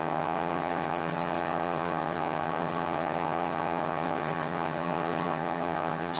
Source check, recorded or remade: remade